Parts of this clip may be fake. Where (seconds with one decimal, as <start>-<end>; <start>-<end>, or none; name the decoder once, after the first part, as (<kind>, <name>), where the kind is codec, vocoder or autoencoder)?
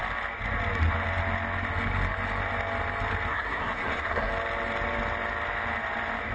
3.3-4.3 (codec, SNAC)